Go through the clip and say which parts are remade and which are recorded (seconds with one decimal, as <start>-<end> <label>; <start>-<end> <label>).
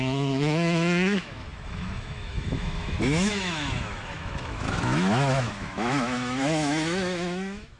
0.0-7.8 remade